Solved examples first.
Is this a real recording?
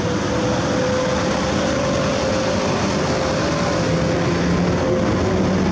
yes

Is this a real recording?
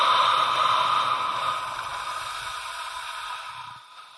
yes